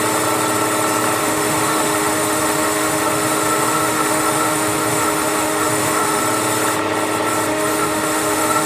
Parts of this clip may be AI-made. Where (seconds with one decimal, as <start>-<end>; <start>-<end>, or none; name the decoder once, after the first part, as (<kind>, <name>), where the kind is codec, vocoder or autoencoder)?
1.2-6.2 (autoencoder, DAC-VAE); 7.5-8.7

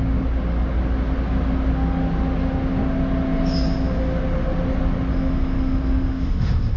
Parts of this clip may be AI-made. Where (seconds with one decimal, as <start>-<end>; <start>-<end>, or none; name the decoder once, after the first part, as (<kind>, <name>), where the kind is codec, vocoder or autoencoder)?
5.1-6.8 (autoencoder, DAC-VAE)

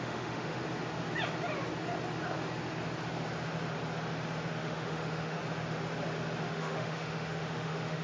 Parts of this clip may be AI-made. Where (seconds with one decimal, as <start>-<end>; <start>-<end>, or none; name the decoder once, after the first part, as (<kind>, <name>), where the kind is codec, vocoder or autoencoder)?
0.0-0.6 (autoencoder, DAC-VAE); 4.5-5.4; 6.4-8.0

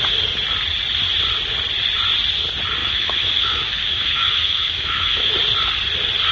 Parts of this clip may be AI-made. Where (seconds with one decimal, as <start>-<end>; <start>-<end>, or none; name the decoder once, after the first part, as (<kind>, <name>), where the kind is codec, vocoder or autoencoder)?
2.8-5.3 (autoencoder, DAC-VAE)

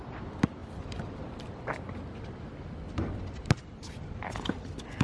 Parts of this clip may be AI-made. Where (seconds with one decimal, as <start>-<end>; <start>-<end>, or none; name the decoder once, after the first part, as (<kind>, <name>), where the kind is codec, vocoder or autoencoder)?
none